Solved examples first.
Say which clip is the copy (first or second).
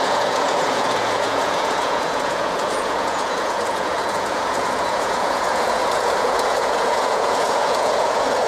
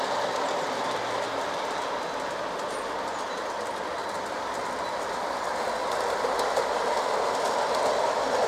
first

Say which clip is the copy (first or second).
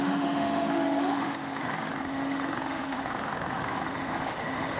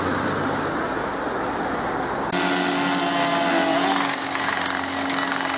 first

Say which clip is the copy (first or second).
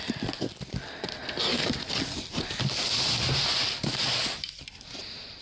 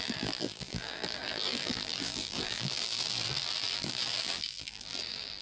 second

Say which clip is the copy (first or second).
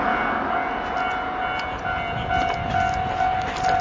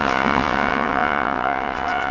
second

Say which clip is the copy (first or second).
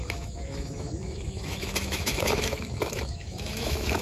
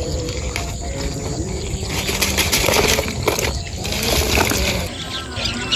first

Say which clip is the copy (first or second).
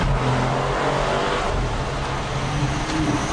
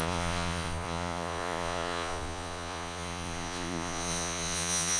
second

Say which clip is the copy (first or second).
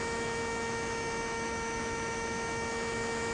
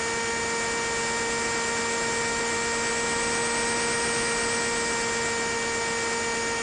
first